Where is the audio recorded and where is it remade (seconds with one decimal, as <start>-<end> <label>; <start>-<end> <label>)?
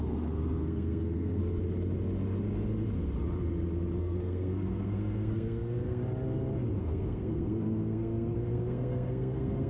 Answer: 0.0-1.4 remade; 1.4-4.0 recorded; 4.0-6.0 remade; 6.0-6.8 recorded; 6.8-9.7 remade